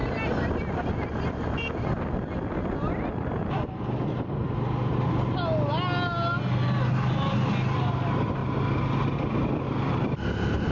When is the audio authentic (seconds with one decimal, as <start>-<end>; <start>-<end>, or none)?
0.0-10.7